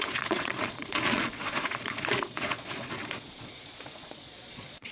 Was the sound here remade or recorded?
remade